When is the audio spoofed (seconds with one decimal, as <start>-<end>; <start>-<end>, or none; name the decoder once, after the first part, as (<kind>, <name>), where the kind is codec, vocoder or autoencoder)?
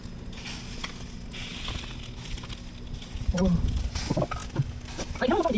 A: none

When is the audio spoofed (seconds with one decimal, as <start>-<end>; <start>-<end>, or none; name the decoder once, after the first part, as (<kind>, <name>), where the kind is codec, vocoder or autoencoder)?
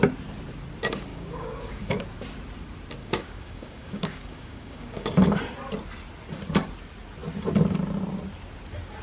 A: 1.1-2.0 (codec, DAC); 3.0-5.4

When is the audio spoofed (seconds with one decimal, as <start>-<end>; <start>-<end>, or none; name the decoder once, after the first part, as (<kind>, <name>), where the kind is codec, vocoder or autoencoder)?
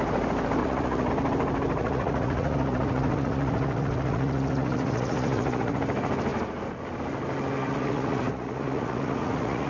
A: 0.6-1.1 (vocoder, Vocos); 1.8-5.8; 7.6-9.7